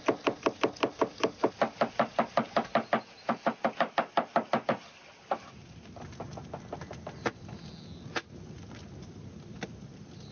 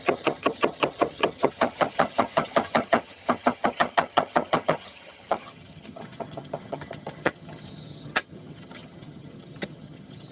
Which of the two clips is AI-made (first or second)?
second